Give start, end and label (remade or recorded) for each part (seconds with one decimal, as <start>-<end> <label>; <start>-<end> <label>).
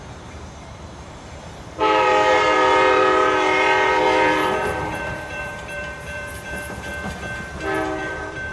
0.0-6.9 remade; 6.9-8.0 recorded; 8.0-8.5 remade